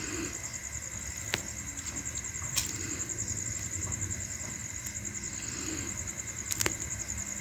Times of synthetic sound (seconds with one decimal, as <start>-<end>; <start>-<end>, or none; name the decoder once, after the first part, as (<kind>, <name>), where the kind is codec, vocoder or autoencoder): 2.6-7.0 (vocoder, BigVGAN v2)